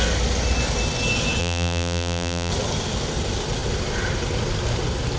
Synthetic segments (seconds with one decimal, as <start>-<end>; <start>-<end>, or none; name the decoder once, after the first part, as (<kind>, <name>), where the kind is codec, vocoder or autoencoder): 1.4-2.5 (vocoder, BigVGAN v2)